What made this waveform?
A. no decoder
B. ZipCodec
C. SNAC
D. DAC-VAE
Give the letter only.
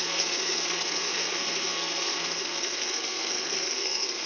C